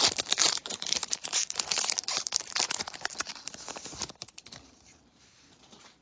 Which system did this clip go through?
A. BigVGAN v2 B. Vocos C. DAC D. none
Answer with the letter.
A